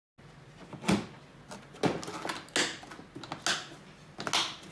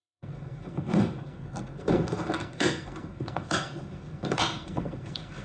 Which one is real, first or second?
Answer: first